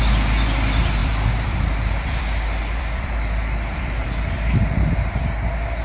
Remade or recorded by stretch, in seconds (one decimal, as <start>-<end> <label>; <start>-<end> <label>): 0.0-1.0 recorded; 1.0-4.5 remade; 4.5-5.8 recorded